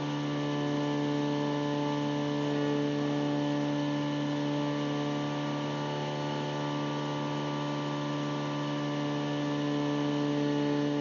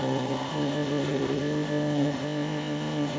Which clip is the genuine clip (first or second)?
first